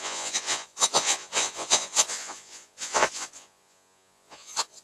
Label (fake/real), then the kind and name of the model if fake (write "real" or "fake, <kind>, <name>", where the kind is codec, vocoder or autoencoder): fake, vocoder, Vocos